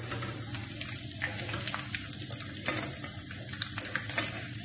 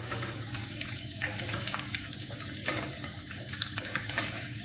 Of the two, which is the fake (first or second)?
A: second